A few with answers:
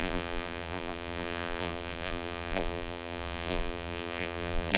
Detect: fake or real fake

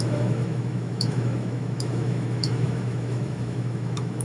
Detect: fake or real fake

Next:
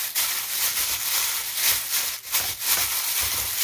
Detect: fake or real real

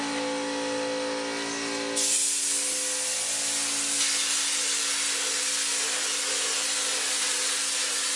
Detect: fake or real real